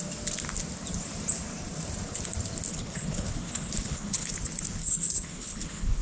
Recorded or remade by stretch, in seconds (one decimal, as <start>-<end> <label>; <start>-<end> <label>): 0.0-2.7 recorded; 2.7-4.3 remade; 4.3-4.8 recorded; 4.8-6.0 remade